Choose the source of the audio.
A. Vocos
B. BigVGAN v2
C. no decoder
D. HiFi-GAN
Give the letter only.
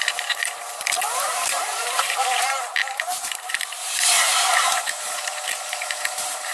B